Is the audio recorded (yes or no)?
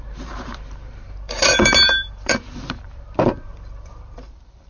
no